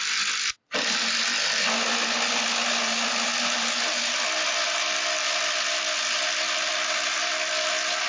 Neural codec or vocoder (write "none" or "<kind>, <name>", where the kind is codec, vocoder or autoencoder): none